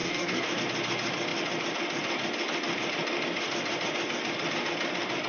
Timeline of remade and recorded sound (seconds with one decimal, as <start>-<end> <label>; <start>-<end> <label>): 0.0-0.6 remade; 0.6-5.3 recorded